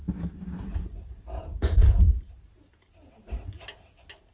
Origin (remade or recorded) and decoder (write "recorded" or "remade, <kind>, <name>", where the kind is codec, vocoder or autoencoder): recorded